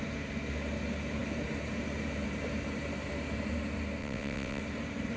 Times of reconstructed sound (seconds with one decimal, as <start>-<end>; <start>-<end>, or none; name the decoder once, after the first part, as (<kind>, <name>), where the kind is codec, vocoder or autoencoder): 4.0-4.6 (vocoder, WaveNeXt)